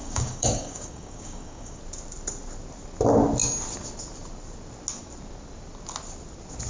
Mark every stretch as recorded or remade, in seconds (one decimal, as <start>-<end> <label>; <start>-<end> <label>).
0.0-1.8 remade; 1.8-6.7 recorded